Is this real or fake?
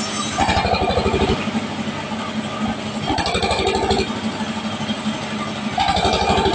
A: real